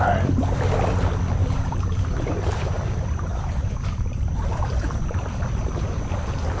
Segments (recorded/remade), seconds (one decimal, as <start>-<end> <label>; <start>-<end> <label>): 0.0-1.4 recorded; 1.4-5.4 remade; 5.4-6.6 recorded